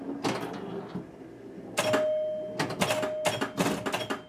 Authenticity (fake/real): real